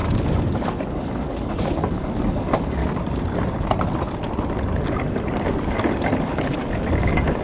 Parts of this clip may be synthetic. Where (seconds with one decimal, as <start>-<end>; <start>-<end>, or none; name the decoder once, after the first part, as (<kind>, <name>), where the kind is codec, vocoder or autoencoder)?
0.0-2.8 (codec, DAC); 6.2-7.4